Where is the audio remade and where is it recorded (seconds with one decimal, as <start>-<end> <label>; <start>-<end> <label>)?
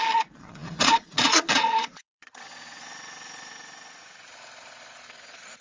0.0-5.6 remade